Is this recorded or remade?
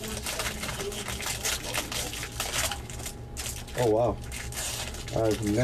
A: recorded